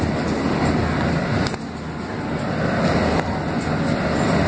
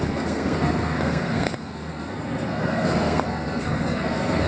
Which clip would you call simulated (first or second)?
second